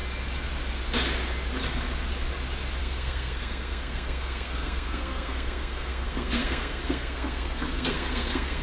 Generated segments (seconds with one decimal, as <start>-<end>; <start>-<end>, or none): 2.8-8.6